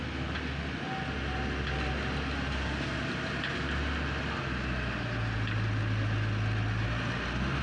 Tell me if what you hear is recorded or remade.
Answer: recorded